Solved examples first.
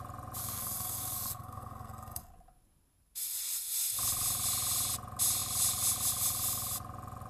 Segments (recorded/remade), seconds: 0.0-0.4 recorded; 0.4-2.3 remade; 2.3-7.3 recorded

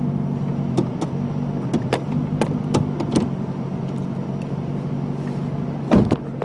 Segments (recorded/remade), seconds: 0.0-6.4 recorded

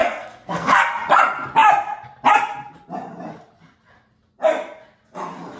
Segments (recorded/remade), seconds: 0.0-0.9 remade; 0.9-5.6 recorded

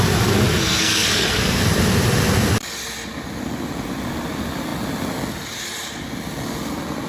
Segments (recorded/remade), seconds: 0.0-0.6 recorded; 0.6-1.6 remade; 1.6-7.1 recorded